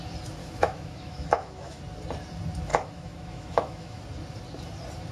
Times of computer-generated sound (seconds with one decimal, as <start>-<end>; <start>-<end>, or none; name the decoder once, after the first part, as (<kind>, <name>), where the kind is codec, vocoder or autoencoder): 0.4-1.8 (autoencoder, DAC-VAE); 2.7-4.0